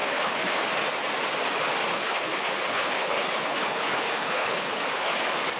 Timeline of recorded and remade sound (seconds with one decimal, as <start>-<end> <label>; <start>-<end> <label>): 0.0-0.6 remade; 0.6-1.9 recorded; 1.9-5.1 remade; 5.1-5.6 recorded